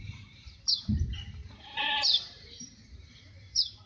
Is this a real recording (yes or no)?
no